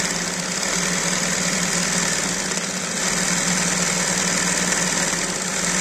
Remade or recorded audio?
recorded